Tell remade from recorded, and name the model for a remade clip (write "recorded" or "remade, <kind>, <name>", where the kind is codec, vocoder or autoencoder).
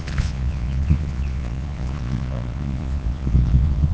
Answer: remade, vocoder, Vocos